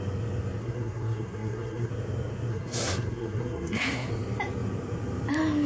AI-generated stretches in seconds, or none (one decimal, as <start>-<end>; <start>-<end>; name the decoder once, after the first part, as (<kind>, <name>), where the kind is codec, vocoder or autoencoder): 0.6-1.9 (codec, SNAC); 2.5-4.1